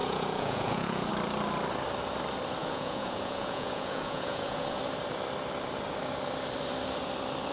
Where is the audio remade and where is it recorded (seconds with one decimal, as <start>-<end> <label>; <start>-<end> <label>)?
0.0-1.1 remade; 1.1-2.6 recorded; 2.6-4.8 remade; 4.8-7.5 recorded